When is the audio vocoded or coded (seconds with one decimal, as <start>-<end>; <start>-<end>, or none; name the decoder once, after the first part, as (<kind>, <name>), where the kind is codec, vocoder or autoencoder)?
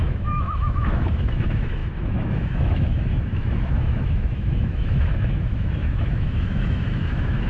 0.0-7.5 (autoencoder, DAC-VAE)